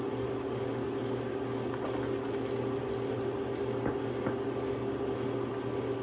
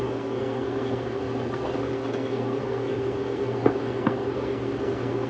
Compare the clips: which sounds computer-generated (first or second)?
second